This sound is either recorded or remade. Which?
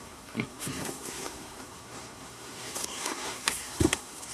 remade